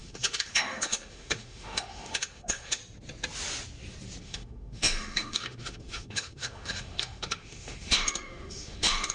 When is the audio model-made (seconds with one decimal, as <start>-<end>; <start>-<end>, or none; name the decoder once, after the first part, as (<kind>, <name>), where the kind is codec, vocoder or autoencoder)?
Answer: 0.0-2.8 (autoencoder, DAC-VAE); 4.2-9.1